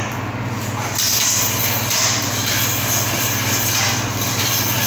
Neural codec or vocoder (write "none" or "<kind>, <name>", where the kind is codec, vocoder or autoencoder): none